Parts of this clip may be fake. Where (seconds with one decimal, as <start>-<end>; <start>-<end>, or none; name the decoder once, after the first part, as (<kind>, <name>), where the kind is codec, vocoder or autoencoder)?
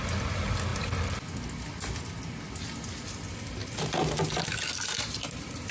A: none